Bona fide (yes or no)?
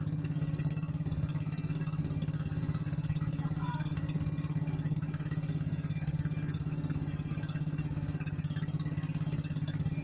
no